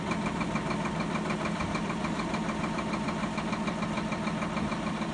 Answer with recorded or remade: recorded